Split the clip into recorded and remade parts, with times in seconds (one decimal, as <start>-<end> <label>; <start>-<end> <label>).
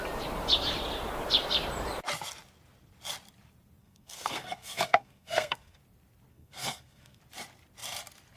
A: 0.0-3.8 recorded; 3.8-5.8 remade; 5.8-6.3 recorded; 6.3-7.2 remade; 7.2-8.4 recorded